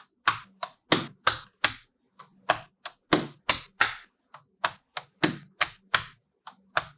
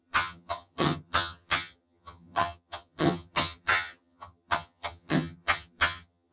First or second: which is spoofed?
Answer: second